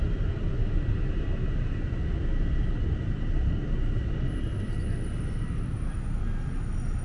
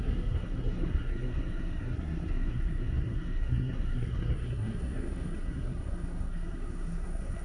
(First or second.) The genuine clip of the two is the first